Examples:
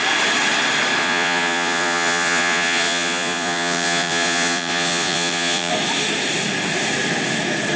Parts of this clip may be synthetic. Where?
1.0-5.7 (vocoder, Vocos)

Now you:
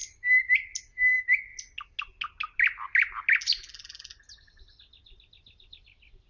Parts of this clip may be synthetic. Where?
none

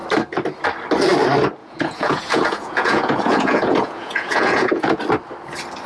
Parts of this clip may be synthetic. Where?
1.6-5.0 (vocoder, Vocos)

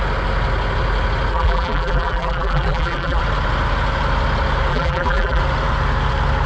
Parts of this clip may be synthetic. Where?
1.3-3.2 (vocoder, BigVGAN v2); 4.7-5.4

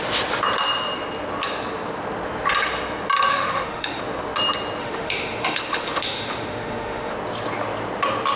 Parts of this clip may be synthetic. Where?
3.3-4.0 (autoencoder, DAC-VAE); 4.8-7.1

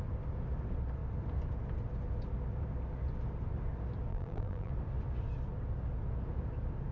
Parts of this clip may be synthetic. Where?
4.1-4.7 (vocoder, BigVGAN v2)